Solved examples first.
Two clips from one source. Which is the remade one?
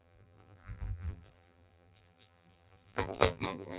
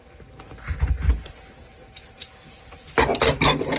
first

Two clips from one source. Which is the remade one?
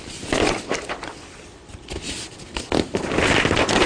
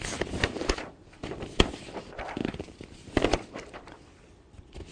second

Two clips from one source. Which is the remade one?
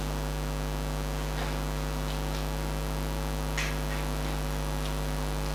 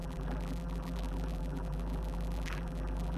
second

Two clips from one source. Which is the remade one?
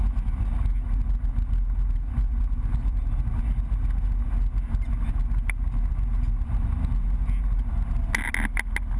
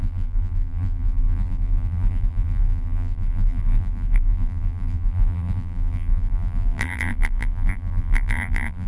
second